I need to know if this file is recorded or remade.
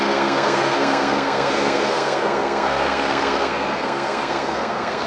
remade